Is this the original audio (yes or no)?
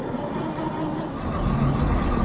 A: yes